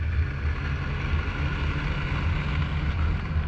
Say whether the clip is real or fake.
real